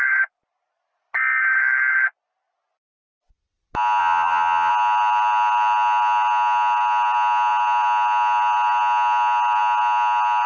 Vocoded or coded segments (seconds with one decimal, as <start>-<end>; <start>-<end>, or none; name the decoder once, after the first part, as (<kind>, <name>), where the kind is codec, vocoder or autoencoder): 4.0-4.7 (vocoder, HiFi-GAN)